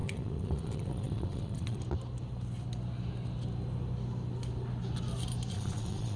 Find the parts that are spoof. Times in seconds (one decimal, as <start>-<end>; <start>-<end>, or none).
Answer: 0.0-1.8; 5.5-6.2